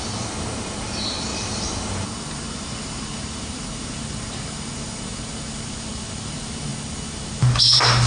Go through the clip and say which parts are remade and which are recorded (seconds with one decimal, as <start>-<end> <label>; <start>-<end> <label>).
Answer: 0.0-6.7 remade; 6.7-7.2 recorded; 7.2-8.1 remade